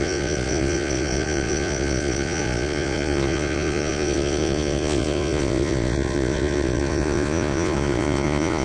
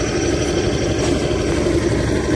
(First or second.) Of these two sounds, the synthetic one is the first